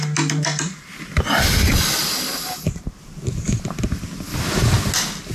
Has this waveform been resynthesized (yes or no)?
no